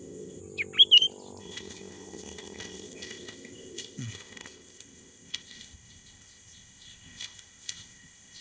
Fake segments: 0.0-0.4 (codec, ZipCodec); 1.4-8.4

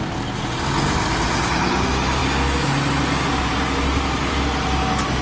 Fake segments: none

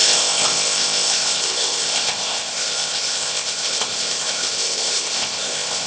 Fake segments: 0.0-5.9 (codec, ZipCodec)

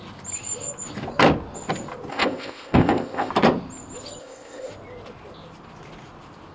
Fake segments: 2.1-3.3 (codec, ZipCodec); 4.2-4.7